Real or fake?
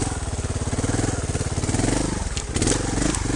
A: real